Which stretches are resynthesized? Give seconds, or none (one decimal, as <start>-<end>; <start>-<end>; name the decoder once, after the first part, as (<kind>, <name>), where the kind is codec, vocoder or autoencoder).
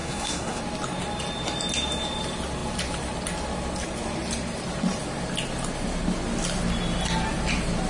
0.0-0.6 (codec, SNAC)